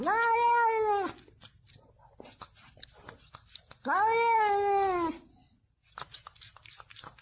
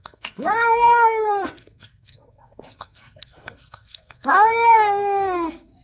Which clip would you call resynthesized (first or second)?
second